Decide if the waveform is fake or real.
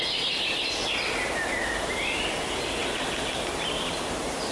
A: real